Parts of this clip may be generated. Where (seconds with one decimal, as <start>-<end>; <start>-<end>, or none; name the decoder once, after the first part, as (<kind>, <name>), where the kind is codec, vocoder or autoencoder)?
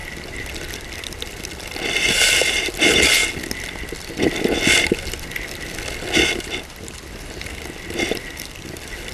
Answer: 0.0-3.2 (vocoder, BigVGAN v2); 7.1-9.1